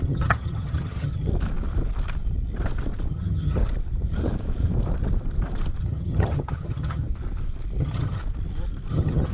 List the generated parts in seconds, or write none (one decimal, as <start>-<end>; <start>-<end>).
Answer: 0.0-1.3; 3.1-3.6; 5.8-7.0; 7.8-8.2; 8.9-9.3